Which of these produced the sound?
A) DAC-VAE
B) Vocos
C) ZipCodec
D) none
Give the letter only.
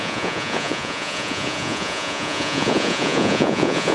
B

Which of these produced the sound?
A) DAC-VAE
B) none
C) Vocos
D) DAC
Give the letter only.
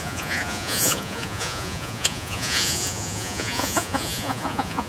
C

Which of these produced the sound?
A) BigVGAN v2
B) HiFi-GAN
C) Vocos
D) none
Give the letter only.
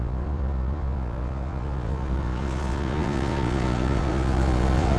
C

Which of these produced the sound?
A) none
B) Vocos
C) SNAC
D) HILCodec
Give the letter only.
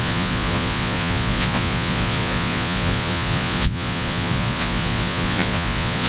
B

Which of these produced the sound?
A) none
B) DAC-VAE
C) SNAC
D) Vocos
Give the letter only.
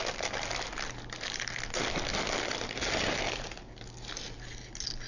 A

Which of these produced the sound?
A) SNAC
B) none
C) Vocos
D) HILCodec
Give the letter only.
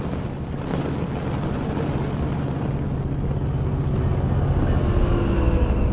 B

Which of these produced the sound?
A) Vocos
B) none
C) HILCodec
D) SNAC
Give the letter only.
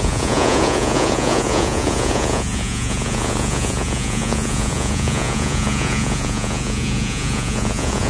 A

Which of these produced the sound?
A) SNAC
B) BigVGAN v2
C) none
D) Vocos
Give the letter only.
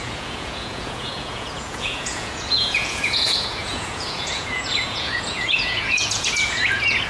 D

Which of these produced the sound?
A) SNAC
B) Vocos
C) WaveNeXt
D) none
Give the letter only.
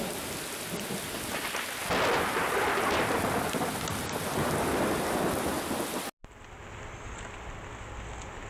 D